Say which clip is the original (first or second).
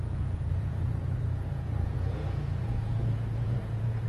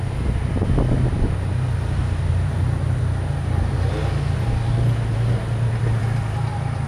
second